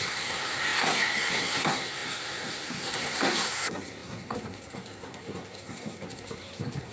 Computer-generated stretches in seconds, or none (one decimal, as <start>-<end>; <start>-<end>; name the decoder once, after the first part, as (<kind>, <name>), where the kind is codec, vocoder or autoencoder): 0.0-6.9 (codec, SNAC)